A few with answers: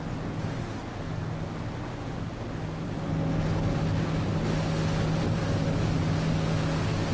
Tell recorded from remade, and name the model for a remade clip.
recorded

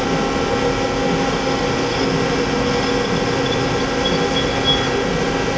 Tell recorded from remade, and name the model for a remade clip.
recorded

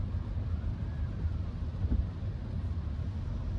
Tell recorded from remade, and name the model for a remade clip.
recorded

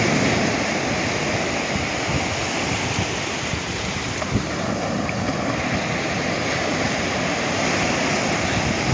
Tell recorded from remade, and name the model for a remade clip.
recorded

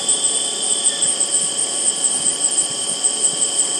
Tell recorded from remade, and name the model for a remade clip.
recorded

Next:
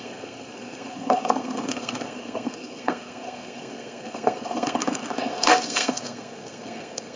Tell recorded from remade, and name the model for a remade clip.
remade, codec, SNAC